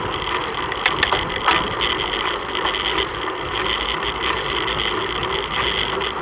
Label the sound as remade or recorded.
recorded